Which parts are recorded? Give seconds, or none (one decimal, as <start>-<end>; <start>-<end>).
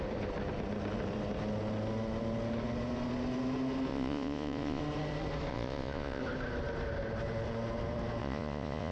0.0-3.9; 4.8-5.5; 6.2-8.2